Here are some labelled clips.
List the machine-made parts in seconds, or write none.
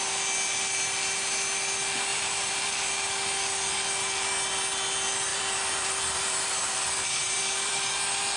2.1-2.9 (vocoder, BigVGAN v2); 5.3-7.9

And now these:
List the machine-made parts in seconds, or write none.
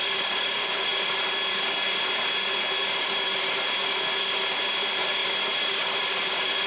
0.0-0.9 (vocoder, BigVGAN v2); 4.6-5.2; 5.7-6.7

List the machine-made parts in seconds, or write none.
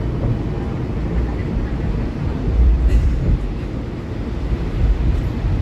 1.4-4.8 (vocoder, BigVGAN v2)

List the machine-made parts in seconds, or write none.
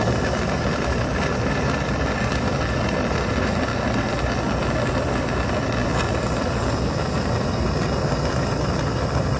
0.0-3.7 (vocoder, BigVGAN v2); 4.9-9.4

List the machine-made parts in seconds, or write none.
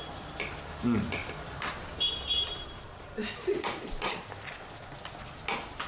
1.2-4.7 (vocoder, BigVGAN v2)